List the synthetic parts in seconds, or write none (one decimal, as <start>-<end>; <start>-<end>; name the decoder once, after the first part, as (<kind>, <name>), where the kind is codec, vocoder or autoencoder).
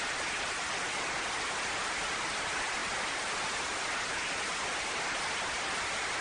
none